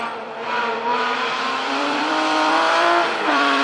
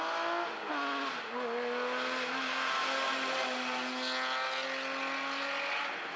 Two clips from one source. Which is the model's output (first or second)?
first